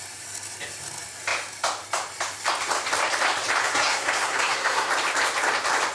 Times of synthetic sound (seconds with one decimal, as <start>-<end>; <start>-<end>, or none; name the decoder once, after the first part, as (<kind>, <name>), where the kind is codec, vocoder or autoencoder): 3.6-4.9 (codec, SNAC)